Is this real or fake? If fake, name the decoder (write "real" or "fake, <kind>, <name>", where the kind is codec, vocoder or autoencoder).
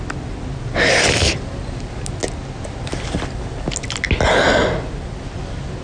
real